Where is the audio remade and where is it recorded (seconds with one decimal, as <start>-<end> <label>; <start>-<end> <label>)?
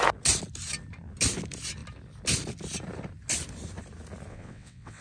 0.0-4.3 recorded; 4.3-5.0 remade